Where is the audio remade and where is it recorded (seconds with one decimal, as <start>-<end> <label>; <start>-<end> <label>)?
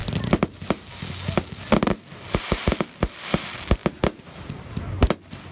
0.0-3.8 recorded; 3.8-4.3 remade; 4.3-5.5 recorded